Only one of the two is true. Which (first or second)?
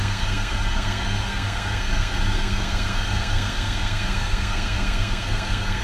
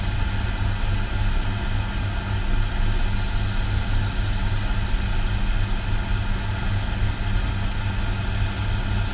second